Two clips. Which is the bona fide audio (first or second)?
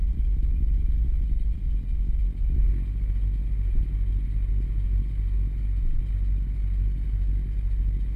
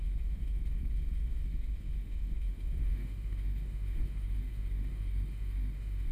first